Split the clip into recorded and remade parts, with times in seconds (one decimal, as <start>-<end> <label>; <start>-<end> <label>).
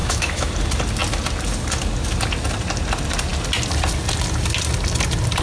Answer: 0.0-0.5 remade; 0.5-5.4 recorded